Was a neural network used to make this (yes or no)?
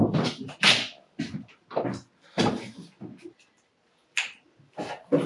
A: no